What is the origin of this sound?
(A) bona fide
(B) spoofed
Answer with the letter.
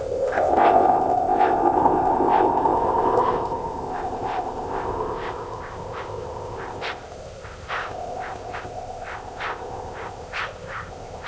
B